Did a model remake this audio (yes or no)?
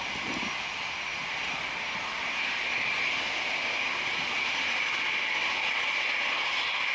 yes